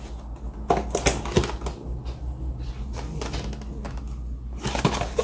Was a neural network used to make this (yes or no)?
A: no